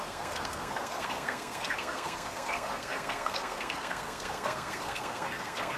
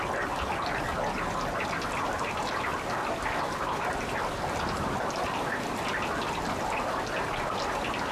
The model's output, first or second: first